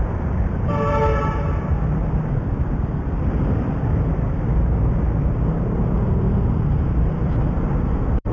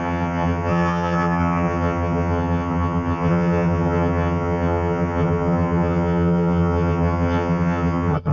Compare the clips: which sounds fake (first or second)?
second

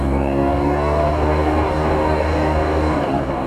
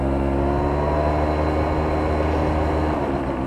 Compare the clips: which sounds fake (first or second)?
first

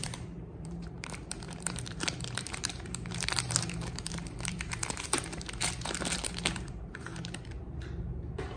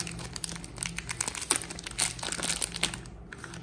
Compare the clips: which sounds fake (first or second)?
first